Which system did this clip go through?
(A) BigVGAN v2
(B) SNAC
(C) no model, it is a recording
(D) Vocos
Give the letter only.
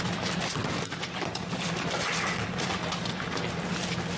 C